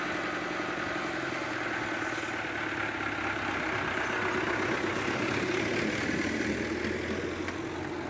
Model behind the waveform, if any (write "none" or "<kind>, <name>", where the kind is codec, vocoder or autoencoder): none